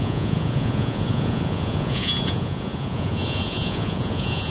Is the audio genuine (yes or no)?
no